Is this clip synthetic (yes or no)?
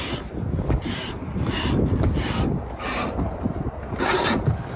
no